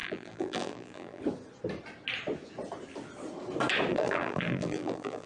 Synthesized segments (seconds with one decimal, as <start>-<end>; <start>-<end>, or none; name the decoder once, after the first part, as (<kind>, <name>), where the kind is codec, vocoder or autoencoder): 0.0-1.2 (vocoder, BigVGAN v2); 3.9-5.3